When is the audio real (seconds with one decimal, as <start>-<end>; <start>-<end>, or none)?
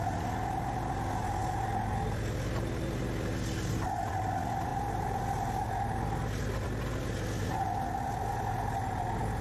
0.0-9.4